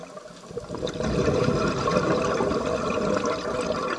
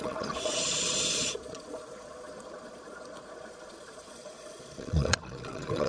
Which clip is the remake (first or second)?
second